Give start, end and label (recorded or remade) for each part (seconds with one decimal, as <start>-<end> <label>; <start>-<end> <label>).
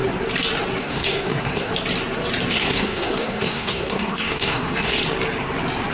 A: 0.0-0.8 recorded; 0.8-1.7 remade; 1.7-2.5 recorded; 2.5-5.0 remade; 5.0-5.9 recorded